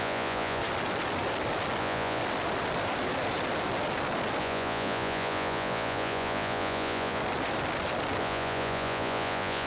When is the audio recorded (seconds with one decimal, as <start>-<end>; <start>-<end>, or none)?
0.6-1.8; 2.2-4.4; 7.2-8.2